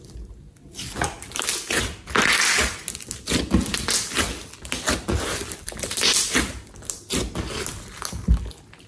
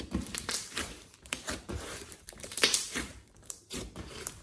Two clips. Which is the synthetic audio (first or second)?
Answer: second